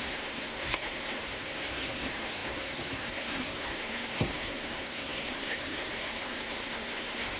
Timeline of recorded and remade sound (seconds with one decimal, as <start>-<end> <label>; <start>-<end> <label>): 0.0-7.4 remade

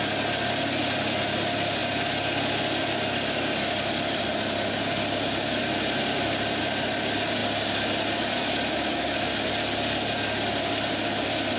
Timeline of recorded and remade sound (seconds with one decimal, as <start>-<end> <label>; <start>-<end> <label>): 0.0-11.6 recorded

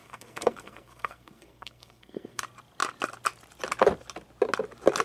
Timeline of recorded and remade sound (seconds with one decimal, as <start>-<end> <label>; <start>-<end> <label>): 0.0-2.4 remade; 2.4-5.0 recorded

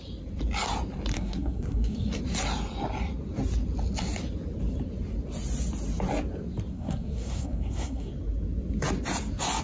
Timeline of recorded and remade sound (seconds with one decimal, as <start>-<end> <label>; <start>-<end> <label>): 0.0-1.1 recorded; 1.1-2.2 remade; 2.2-6.7 recorded; 6.7-8.1 remade; 8.1-9.6 recorded

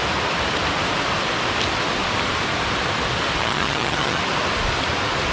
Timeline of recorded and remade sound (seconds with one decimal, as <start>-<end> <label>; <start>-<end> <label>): 0.0-3.4 recorded; 3.4-4.2 remade; 4.2-5.3 recorded

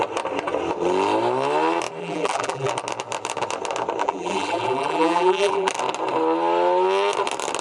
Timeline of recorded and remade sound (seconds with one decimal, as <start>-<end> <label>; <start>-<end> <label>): 0.0-2.0 recorded; 2.0-2.7 remade; 2.7-4.0 recorded; 4.0-5.7 remade; 5.7-7.6 recorded